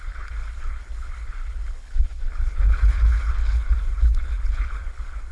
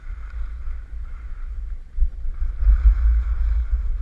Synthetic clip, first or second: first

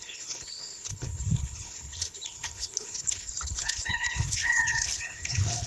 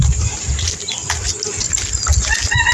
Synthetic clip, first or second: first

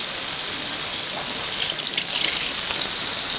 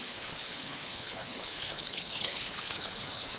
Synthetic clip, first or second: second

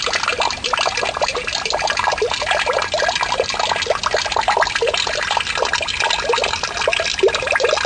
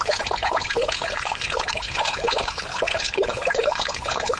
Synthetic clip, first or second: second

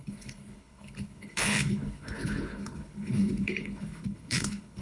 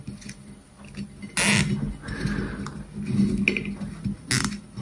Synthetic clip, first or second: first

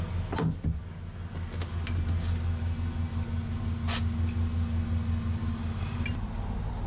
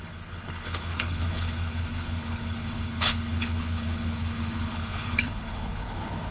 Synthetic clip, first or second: second